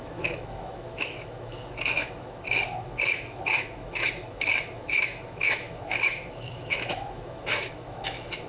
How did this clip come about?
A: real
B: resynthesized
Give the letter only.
B